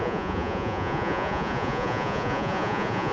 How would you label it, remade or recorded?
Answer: remade